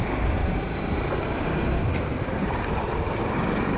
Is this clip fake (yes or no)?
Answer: yes